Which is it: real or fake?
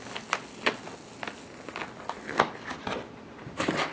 real